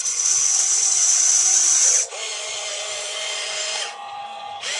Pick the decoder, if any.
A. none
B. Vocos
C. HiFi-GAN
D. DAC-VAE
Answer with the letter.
B